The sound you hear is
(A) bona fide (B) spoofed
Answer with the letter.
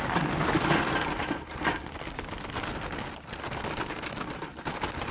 A